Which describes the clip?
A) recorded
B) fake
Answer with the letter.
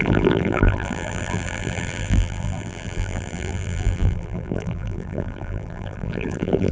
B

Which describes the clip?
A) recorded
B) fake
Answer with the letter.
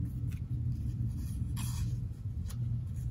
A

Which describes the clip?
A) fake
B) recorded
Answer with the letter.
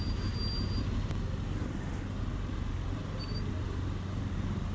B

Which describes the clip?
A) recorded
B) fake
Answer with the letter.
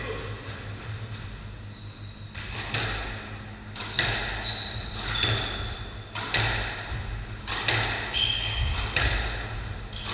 A